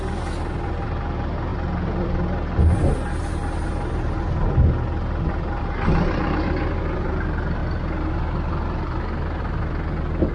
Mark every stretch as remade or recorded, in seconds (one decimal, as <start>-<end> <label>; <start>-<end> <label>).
0.0-10.3 recorded